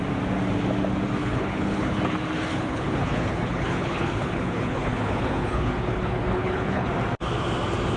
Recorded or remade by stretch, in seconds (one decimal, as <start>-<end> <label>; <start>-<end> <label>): 0.0-1.2 recorded; 1.2-2.0 remade; 2.0-2.5 recorded; 2.5-6.9 remade; 6.9-8.0 recorded